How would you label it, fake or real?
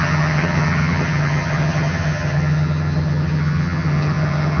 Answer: fake